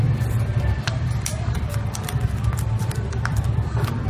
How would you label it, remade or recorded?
remade